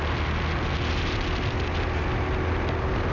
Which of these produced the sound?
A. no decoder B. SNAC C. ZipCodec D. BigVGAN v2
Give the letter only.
A